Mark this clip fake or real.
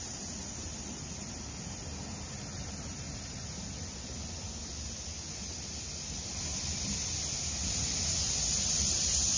real